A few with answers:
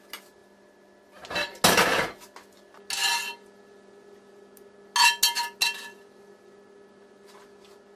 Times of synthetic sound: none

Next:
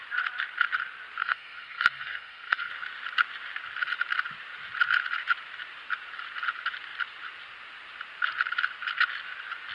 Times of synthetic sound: 1.2-2.7 (codec, SNAC)

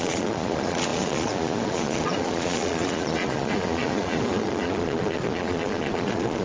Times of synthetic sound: 0.0-6.4 (vocoder, Vocos)

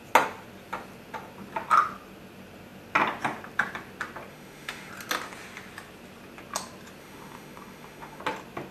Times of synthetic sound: 4.3-4.9 (autoencoder, DAC-VAE); 7.0-8.2